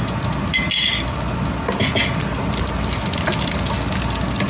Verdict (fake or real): real